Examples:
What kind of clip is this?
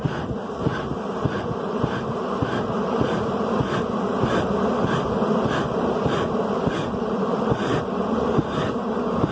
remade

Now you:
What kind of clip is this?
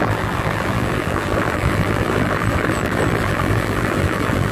remade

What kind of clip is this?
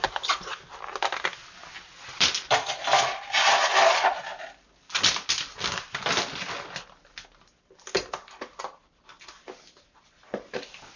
recorded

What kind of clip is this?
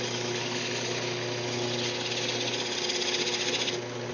recorded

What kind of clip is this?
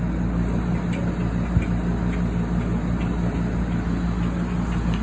recorded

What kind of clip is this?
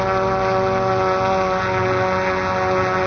recorded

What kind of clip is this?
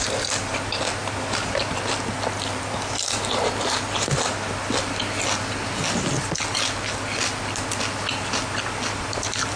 recorded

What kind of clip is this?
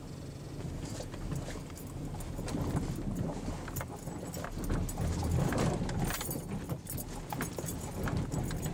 recorded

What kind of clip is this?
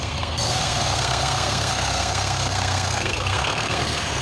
remade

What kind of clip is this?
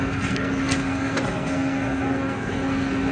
remade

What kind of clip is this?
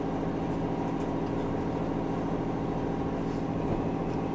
recorded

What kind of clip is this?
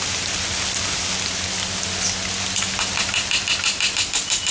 recorded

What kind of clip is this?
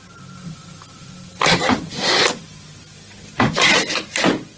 recorded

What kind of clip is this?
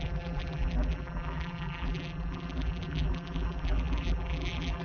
remade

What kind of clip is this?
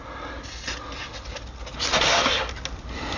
recorded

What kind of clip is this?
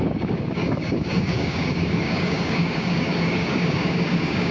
remade